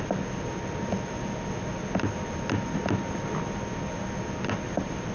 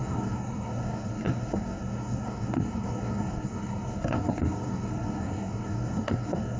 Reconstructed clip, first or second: second